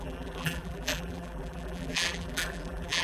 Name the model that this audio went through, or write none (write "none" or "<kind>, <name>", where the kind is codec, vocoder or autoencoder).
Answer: vocoder, BigVGAN v2